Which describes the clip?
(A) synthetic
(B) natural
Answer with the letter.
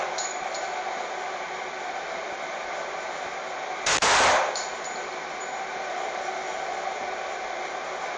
B